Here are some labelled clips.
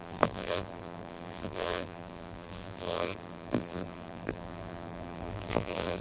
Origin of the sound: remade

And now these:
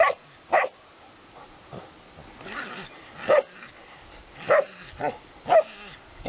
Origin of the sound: recorded